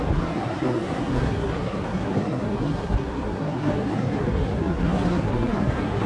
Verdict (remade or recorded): remade